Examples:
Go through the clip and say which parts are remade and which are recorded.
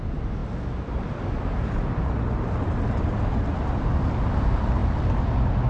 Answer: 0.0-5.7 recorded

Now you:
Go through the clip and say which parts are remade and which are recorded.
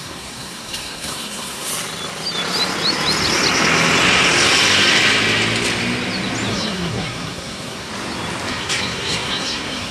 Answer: 0.0-1.7 remade; 1.7-6.5 recorded; 6.5-7.9 remade; 7.9-8.5 recorded; 8.5-9.9 remade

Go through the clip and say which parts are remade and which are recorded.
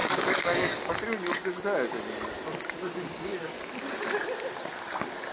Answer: 0.0-0.9 remade; 0.9-5.3 recorded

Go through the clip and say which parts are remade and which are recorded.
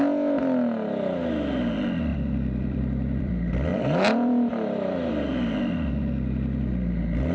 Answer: 0.0-2.1 recorded; 2.1-3.3 remade; 3.3-3.7 recorded; 3.7-5.1 remade; 5.1-7.3 recorded